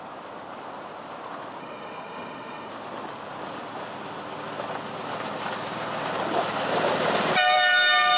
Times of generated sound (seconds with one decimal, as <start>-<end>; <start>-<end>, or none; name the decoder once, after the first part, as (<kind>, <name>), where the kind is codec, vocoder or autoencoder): 1.6-2.7 (autoencoder, DAC-VAE)